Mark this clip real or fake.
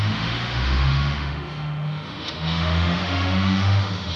fake